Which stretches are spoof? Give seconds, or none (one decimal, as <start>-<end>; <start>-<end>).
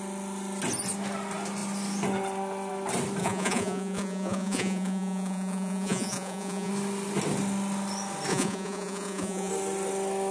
3.2-6.7; 8.3-9.5